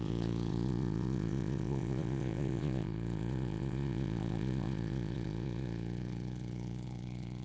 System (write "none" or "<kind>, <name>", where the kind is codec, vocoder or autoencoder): vocoder, Vocos